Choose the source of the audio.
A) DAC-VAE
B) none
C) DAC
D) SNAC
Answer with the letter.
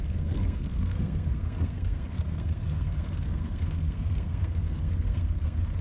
D